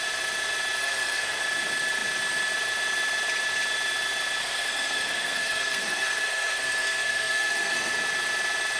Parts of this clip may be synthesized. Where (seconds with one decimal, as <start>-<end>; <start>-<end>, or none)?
0.8-1.4; 4.4-7.9